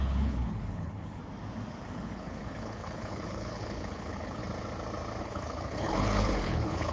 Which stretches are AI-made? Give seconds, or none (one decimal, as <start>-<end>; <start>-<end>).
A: 0.0-1.2; 1.9-4.4; 5.2-6.9